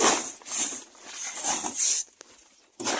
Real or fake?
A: real